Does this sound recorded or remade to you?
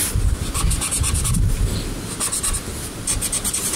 recorded